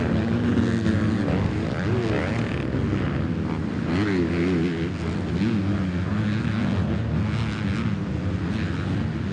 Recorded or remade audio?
recorded